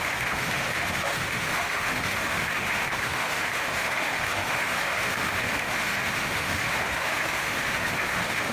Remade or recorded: remade